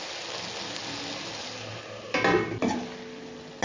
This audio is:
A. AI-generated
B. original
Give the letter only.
B